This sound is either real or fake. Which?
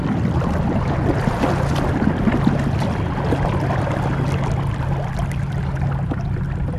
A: real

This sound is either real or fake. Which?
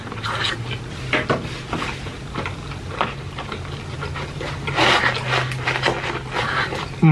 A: real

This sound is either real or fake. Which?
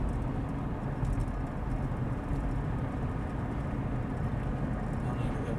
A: real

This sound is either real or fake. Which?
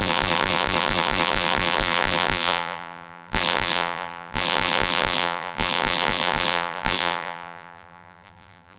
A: fake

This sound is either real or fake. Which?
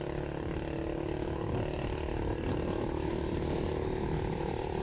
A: real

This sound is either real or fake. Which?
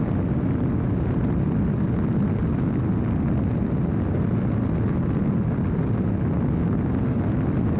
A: real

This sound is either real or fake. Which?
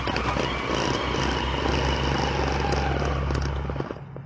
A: real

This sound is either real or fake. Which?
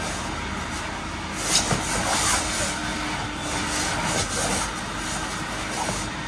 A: real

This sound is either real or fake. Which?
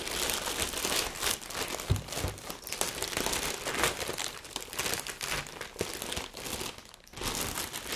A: real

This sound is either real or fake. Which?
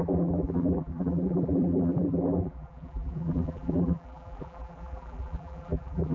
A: fake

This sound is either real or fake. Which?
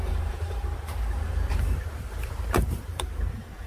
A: fake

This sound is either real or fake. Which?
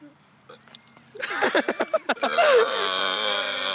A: real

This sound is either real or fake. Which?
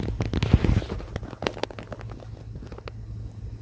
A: real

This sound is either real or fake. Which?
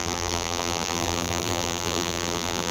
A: fake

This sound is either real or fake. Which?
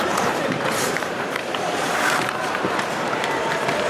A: fake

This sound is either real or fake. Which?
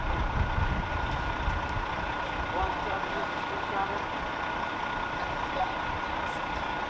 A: fake